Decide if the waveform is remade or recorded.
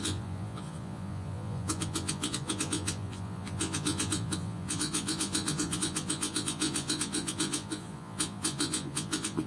remade